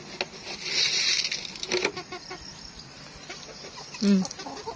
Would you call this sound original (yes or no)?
yes